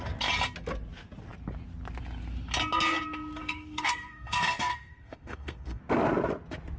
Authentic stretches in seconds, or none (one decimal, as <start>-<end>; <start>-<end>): 0.0-3.4; 5.8-6.8